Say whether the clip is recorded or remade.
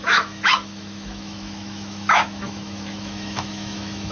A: remade